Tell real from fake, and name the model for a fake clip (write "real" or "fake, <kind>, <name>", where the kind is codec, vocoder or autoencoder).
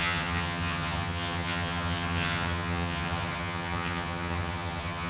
fake, vocoder, HiFi-GAN